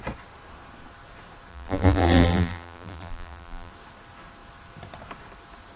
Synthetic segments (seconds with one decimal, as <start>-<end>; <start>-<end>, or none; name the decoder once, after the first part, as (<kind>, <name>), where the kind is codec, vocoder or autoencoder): 1.5-3.7 (vocoder, BigVGAN v2)